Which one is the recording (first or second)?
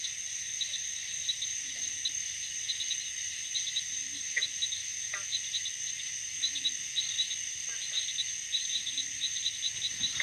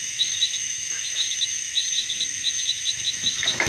first